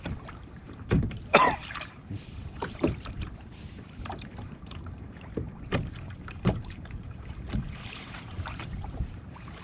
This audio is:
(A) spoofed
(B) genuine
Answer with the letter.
A